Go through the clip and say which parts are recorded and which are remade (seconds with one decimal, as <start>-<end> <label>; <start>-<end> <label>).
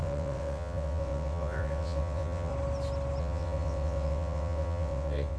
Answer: 0.0-2.5 remade; 2.5-3.2 recorded; 3.2-5.4 remade